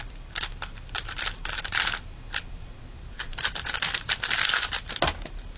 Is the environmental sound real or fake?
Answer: real